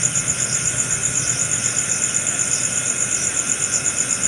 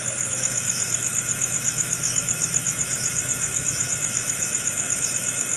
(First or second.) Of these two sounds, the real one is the first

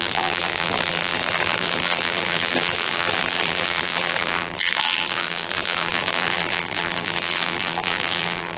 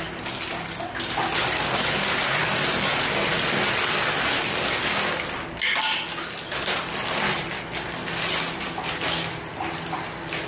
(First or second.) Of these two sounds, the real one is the second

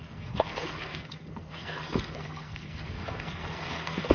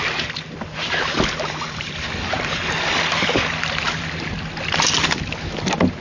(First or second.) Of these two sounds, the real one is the second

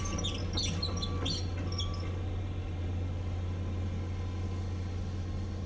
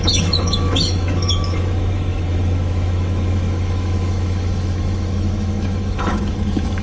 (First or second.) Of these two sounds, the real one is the first